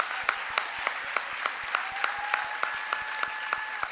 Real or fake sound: real